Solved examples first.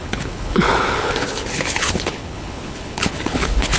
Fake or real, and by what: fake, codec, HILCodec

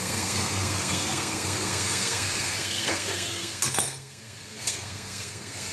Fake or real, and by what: fake, codec, SNAC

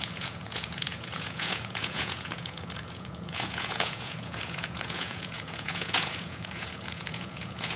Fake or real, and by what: fake, vocoder, Vocos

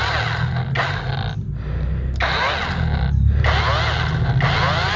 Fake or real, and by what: real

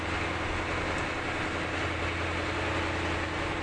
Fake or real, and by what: real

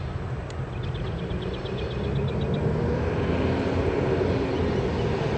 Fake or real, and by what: real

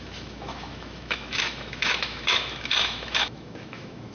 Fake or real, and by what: fake, autoencoder, DAC-VAE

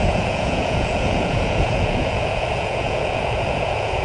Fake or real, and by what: fake, vocoder, Vocos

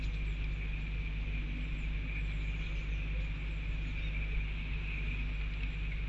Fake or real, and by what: real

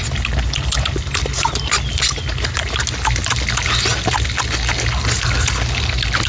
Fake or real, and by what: real